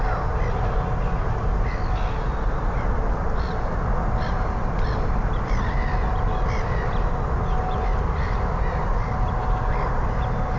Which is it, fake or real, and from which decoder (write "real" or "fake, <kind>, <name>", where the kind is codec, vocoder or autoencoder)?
real